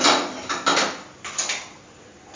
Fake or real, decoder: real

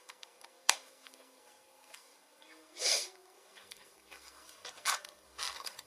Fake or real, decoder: fake, codec, SNAC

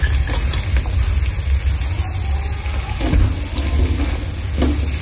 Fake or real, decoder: real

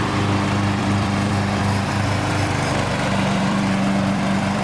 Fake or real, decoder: fake, vocoder, BigVGAN v2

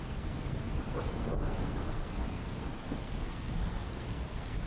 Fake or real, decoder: fake, codec, SNAC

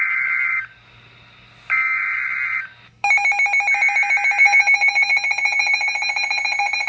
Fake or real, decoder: real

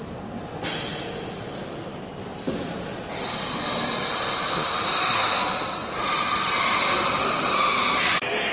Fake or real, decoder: real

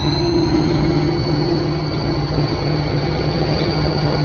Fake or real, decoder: fake, vocoder, HiFi-GAN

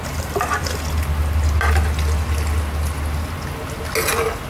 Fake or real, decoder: real